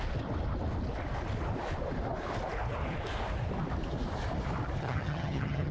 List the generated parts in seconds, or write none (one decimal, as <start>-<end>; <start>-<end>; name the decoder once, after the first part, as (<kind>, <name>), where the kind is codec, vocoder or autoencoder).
4.8-5.7 (vocoder, HiFi-GAN)

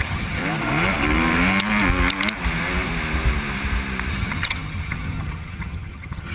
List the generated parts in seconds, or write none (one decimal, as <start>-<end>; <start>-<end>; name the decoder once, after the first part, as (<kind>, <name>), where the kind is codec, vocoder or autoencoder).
0.0-0.4 (vocoder, HiFi-GAN); 4.1-6.3

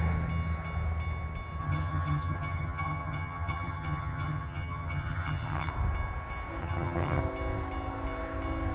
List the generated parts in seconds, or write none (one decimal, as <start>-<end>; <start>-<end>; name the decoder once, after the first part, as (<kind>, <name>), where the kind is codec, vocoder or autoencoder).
1.6-5.7 (vocoder, HiFi-GAN); 6.6-7.2

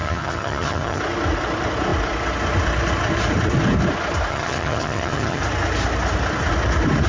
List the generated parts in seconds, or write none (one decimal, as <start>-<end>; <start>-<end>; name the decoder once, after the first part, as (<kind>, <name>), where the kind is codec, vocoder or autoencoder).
0.0-1.0 (vocoder, HiFi-GAN); 4.3-5.4

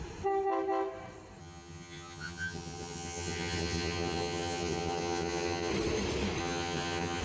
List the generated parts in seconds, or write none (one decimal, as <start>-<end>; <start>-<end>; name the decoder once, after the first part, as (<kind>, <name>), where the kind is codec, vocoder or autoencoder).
1.4-5.7 (vocoder, HiFi-GAN); 6.4-7.2

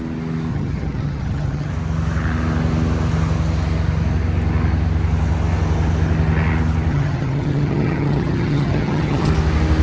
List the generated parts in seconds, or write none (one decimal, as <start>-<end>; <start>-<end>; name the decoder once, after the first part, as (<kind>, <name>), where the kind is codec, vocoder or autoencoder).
0.5-1.7 (vocoder, HiFi-GAN); 6.9-9.3

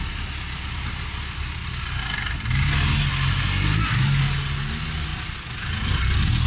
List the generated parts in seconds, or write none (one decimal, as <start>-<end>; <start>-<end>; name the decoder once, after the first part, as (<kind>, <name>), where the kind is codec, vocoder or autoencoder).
none

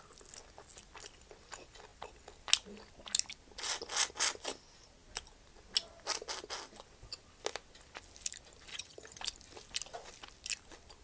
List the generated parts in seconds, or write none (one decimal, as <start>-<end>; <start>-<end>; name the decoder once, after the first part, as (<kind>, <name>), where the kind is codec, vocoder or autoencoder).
8.7-9.2 (vocoder, HiFi-GAN)